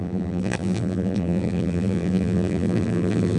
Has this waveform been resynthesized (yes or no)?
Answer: yes